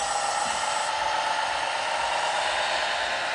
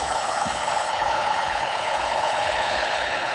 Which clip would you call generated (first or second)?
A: second